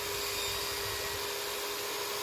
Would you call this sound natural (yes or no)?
yes